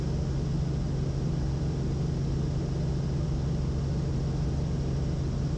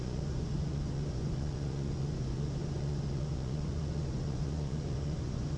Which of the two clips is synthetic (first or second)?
second